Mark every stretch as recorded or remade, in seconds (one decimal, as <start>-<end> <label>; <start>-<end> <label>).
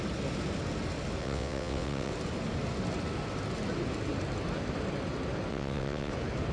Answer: 0.0-1.2 recorded; 1.2-2.1 remade; 2.1-5.5 recorded; 5.5-6.1 remade; 6.1-6.5 recorded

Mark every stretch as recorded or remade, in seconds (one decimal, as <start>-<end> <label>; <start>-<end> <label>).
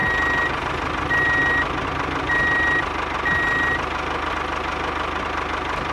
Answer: 0.0-5.9 recorded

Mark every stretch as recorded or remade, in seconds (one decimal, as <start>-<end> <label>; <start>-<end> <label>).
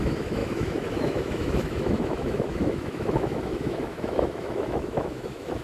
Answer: 0.0-5.6 remade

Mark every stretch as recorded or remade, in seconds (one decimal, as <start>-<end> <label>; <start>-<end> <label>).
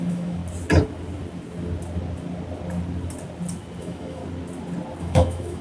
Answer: 0.0-0.4 remade; 0.4-3.8 recorded; 3.8-4.2 remade; 4.2-5.0 recorded; 5.0-5.6 remade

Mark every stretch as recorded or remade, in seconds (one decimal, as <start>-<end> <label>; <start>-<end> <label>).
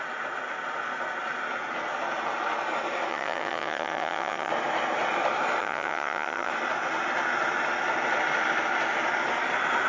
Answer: 0.0-3.1 recorded; 3.1-4.5 remade; 4.5-5.6 recorded; 5.6-6.5 remade; 6.5-9.9 recorded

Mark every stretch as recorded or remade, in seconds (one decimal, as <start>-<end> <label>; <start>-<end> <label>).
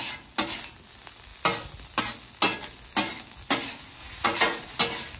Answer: 0.0-4.0 recorded; 4.0-4.8 remade; 4.8-5.2 recorded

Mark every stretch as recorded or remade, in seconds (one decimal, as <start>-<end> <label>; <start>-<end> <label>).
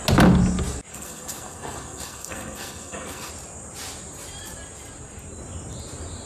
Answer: 0.0-0.9 recorded; 0.9-3.3 remade; 3.3-6.3 recorded